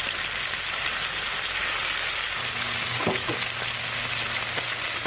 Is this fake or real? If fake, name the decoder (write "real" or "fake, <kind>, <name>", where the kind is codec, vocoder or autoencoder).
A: real